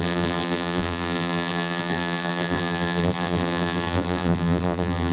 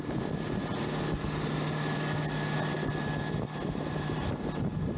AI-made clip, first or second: first